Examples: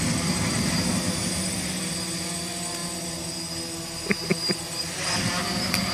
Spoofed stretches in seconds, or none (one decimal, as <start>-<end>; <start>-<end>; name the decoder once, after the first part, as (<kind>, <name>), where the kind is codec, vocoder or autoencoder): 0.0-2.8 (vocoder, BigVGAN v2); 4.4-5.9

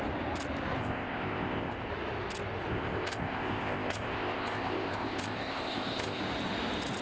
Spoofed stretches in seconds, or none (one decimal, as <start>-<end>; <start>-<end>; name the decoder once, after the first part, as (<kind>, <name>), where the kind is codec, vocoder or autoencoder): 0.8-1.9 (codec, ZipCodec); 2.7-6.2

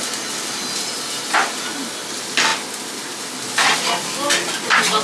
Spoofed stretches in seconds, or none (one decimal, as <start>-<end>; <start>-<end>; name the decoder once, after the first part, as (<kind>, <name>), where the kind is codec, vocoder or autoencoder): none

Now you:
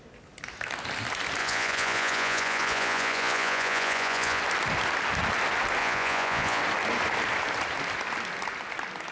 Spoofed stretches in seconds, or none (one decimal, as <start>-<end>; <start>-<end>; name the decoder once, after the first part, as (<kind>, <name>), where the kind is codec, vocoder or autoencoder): 1.4-4.4 (vocoder, Vocos); 5.8-6.6

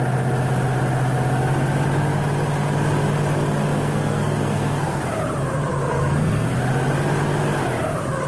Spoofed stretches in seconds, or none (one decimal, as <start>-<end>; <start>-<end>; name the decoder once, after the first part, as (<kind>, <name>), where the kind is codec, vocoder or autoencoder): 3.7-5.0 (codec, SNAC); 5.8-6.5

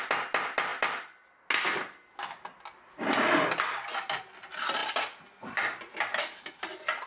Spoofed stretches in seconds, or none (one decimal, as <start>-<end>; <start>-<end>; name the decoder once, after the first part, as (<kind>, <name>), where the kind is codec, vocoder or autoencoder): 4.8-6.5 (vocoder, BigVGAN v2)

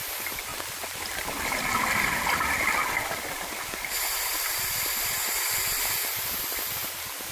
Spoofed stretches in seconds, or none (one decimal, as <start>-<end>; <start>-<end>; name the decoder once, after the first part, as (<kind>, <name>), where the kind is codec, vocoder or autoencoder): 2.8-5.4 (vocoder, BigVGAN v2)